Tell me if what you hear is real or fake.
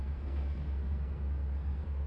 fake